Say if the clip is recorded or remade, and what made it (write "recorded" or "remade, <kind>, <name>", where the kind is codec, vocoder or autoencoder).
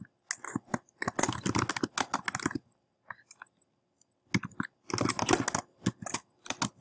recorded